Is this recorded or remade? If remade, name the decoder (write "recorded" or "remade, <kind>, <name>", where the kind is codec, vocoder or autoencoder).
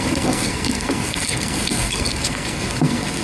remade, codec, SNAC